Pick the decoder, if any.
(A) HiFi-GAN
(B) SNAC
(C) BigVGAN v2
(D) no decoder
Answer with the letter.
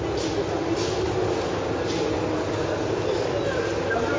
D